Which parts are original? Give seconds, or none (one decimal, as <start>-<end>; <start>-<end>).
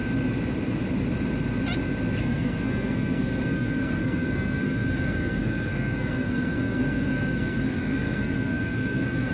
0.0-2.2